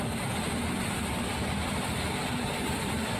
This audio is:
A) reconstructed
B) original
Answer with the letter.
A